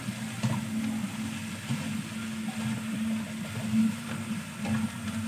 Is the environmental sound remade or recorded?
recorded